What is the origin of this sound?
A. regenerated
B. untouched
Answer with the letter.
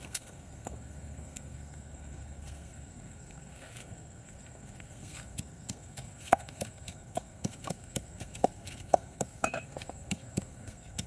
A